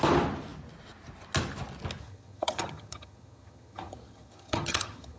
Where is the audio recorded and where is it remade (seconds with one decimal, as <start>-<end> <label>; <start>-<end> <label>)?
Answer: 0.0-2.0 recorded; 2.0-5.2 remade